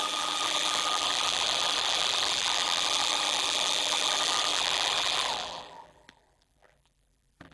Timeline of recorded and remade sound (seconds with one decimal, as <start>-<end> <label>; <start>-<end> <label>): 0.0-7.5 remade